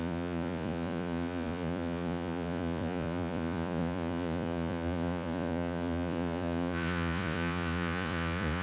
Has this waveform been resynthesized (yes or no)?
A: yes